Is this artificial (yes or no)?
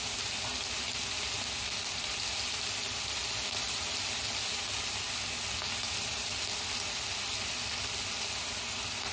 no